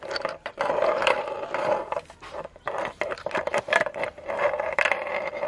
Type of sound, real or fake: fake